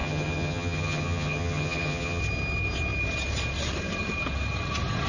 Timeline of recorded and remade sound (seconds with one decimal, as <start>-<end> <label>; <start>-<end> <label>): 0.0-2.2 remade; 2.2-5.1 recorded